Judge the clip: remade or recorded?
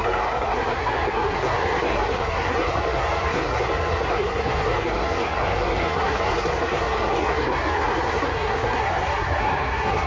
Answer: remade